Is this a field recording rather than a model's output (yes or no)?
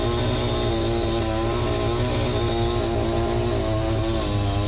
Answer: yes